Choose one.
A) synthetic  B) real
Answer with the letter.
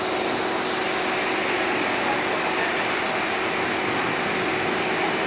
B